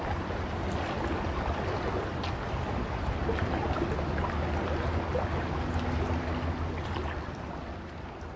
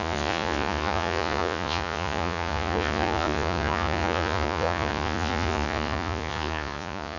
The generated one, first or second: second